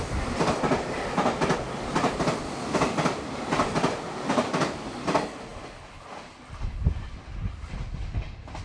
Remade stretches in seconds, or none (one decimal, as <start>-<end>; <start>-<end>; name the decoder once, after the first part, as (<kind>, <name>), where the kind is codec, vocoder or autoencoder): none